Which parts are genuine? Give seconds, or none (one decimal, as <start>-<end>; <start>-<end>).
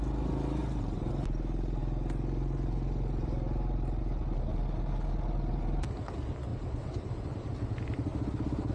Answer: 0.0-0.6; 1.1-6.5; 7.5-8.7